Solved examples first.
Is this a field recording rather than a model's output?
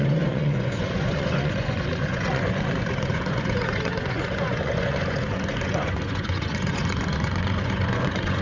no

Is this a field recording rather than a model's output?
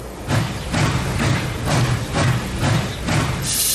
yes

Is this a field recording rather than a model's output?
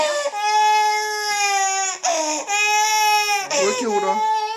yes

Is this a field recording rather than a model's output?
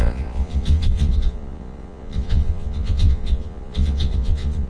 no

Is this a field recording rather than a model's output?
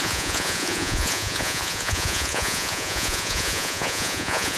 no